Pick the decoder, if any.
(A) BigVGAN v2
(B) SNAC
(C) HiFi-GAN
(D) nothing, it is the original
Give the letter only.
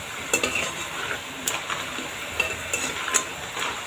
D